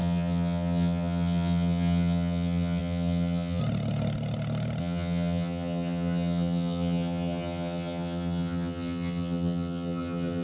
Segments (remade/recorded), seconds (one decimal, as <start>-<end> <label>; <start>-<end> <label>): 0.0-3.6 remade; 3.6-4.8 recorded; 4.8-10.4 remade